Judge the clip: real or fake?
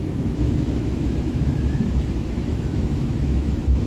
fake